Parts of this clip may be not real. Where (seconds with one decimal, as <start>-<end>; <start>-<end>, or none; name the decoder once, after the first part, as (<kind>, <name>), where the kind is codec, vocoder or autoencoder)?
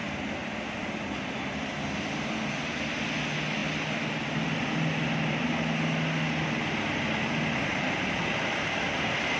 none